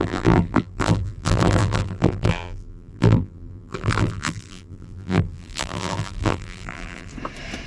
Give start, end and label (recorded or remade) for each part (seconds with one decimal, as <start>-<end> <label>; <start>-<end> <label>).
0.0-7.1 remade; 7.1-7.7 recorded